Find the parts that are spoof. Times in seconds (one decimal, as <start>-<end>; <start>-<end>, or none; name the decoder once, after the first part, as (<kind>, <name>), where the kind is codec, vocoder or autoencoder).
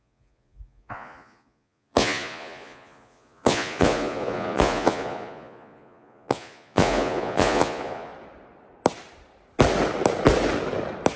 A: 0.0-8.1 (vocoder, Vocos)